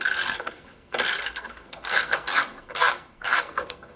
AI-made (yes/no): yes